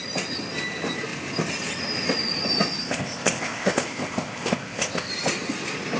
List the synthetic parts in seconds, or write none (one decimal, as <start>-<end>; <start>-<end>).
2.8-5.1